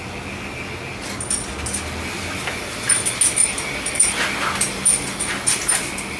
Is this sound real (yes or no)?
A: yes